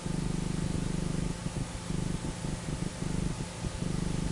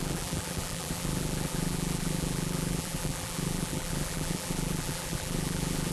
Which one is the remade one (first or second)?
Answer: second